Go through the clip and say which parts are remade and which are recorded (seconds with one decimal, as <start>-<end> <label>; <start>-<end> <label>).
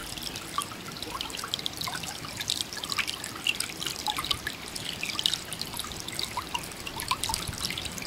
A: 0.0-8.1 recorded